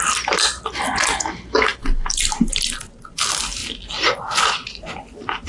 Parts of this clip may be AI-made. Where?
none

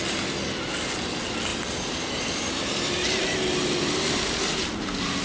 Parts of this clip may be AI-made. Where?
1.5-4.6 (vocoder, BigVGAN v2)

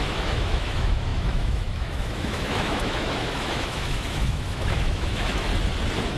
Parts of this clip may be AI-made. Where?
0.0-5.5 (autoencoder, DAC-VAE)

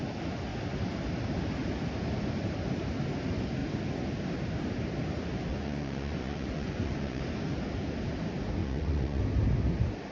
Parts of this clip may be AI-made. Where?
5.5-7.2 (vocoder, Vocos); 8.6-9.2

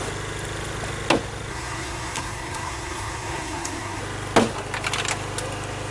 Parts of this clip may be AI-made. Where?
1.5-4.0 (codec, SNAC)

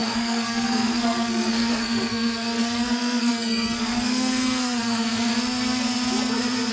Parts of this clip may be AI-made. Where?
0.0-5.3 (codec, SNAC)

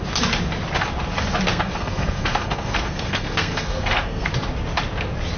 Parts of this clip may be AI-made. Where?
1.5-4.3 (codec, SNAC)